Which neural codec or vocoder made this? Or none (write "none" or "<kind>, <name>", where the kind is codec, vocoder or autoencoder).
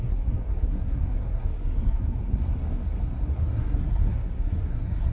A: codec, SNAC